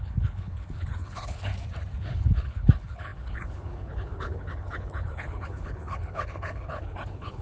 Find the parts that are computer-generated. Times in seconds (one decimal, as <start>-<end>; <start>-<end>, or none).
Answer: 0.0-1.5; 2.0-7.4